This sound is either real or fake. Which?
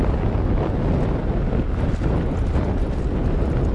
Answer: real